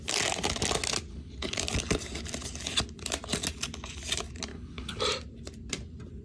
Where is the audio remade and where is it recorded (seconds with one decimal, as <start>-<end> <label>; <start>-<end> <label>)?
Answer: 0.0-1.1 recorded; 1.1-1.6 remade; 1.6-4.5 recorded; 4.5-5.0 remade; 5.0-6.2 recorded